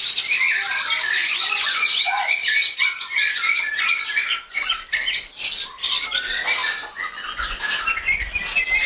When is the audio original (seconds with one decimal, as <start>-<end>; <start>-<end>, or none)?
0.0-1.2; 4.7-6.6; 7.6-8.9